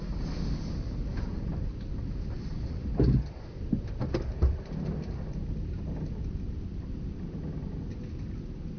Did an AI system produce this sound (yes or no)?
no